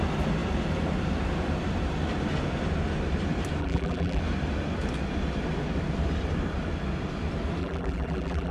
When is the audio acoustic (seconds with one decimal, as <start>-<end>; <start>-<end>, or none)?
0.0-3.6; 4.2-7.6